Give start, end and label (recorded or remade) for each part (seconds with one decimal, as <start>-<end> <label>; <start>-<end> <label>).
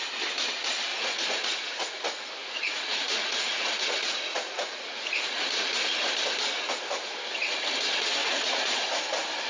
0.0-0.9 recorded; 0.9-5.5 remade; 5.5-8.2 recorded; 8.2-8.9 remade; 8.9-9.5 recorded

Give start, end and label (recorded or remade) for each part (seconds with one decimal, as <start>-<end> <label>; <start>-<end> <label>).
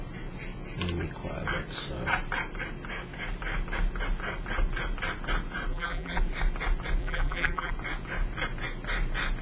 0.0-5.7 recorded; 5.7-6.2 remade; 6.2-7.0 recorded; 7.0-7.7 remade; 7.7-9.4 recorded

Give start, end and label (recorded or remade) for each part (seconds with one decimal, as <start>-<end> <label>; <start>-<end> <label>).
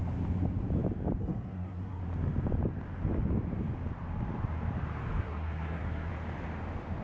0.0-1.2 recorded; 1.2-2.0 remade; 2.0-5.2 recorded; 5.2-6.1 remade; 6.1-7.0 recorded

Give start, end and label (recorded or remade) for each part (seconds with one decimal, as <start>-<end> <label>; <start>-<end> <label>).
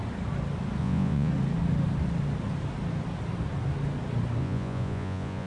0.0-0.8 recorded; 0.8-1.3 remade; 1.3-4.4 recorded; 4.4-5.5 remade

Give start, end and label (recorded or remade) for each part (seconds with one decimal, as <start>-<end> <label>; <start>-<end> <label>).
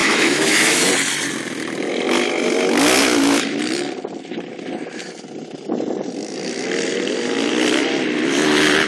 0.0-0.8 remade; 0.8-3.0 recorded; 3.0-3.6 remade; 3.6-8.9 recorded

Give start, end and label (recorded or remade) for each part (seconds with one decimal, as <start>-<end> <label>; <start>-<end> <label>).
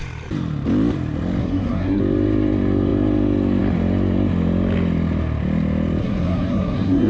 0.0-1.4 recorded; 1.4-2.0 remade; 2.0-6.0 recorded; 6.0-7.1 remade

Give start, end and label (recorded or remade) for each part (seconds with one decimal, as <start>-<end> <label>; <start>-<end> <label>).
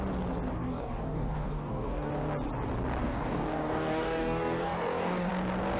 0.0-0.5 recorded; 0.5-2.1 remade; 2.1-3.0 recorded; 3.0-5.3 remade; 5.3-5.8 recorded